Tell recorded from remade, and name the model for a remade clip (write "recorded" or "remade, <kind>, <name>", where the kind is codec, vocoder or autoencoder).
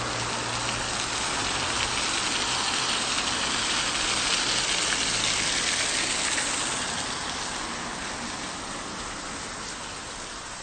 recorded